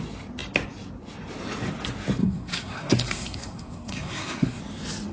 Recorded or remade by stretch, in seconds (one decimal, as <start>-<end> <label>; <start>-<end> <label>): 0.0-2.2 recorded; 2.2-4.6 remade; 4.6-5.1 recorded